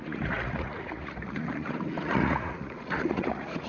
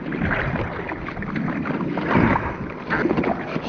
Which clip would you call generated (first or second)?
first